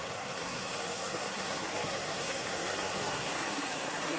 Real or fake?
fake